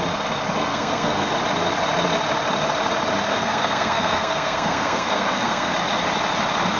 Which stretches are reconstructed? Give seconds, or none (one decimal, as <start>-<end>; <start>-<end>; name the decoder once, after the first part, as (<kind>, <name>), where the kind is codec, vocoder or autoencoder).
0.7-1.3 (codec, SNAC); 3.3-5.7